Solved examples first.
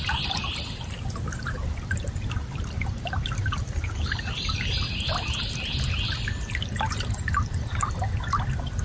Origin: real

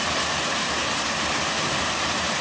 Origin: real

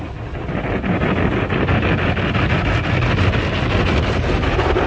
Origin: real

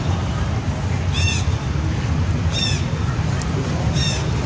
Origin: real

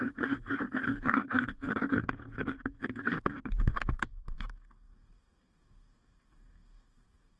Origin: fake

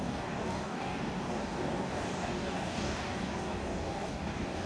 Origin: fake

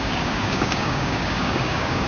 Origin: fake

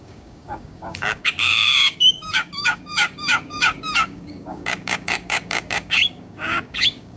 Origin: fake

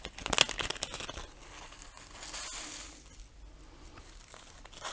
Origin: real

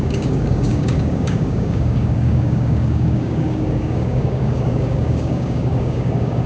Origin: fake